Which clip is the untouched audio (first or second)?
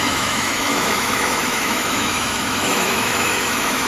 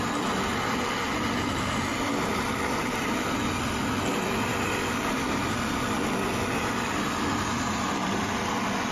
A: second